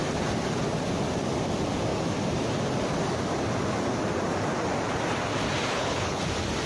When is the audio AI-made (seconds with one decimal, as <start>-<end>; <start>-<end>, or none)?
5.7-6.2